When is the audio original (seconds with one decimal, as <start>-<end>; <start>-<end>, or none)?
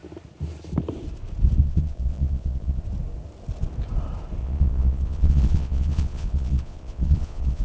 0.0-1.6; 2.8-4.4